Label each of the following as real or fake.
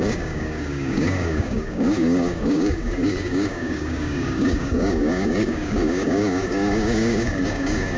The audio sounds fake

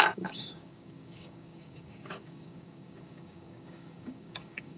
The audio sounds fake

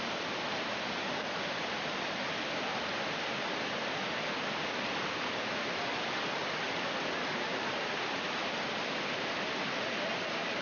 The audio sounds real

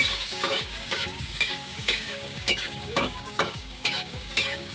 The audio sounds fake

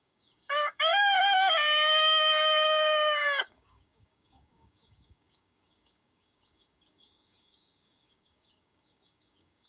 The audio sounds fake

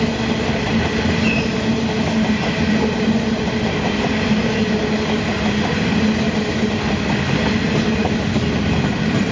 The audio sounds real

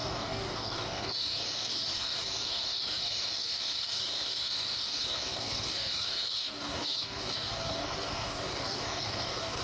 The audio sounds fake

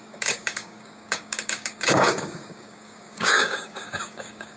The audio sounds fake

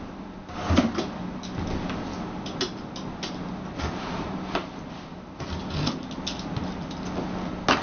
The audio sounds real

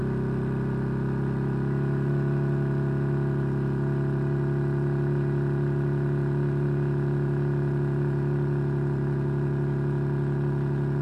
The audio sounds real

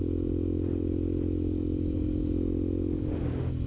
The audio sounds real